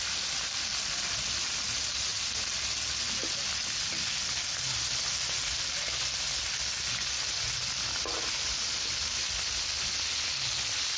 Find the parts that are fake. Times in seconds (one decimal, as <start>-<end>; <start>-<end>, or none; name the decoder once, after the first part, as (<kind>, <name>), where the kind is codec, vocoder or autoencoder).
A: none